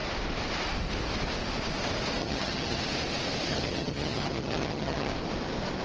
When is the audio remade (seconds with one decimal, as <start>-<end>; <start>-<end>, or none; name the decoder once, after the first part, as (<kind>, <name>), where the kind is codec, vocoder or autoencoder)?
2.2-2.8 (vocoder, HiFi-GAN); 3.5-5.1